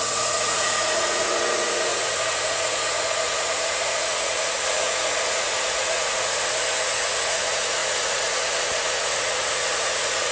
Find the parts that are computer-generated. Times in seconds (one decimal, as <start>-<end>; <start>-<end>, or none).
0.0-10.3